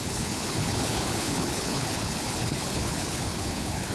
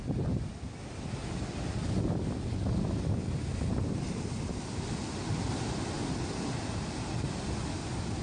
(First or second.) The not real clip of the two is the first